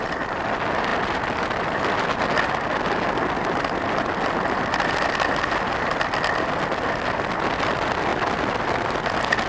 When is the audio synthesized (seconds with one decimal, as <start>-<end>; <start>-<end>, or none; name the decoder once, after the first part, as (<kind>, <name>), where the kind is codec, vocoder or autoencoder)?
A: none